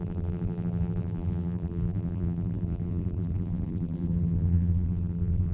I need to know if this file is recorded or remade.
remade